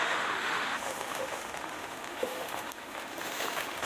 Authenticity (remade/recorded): remade